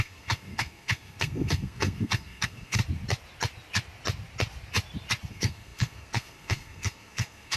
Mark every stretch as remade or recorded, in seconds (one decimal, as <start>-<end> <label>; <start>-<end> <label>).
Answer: 0.0-2.8 remade; 2.8-5.3 recorded; 5.3-7.6 remade